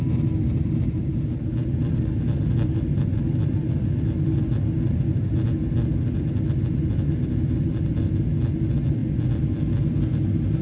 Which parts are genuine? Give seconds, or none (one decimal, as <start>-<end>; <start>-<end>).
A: 0.0-10.6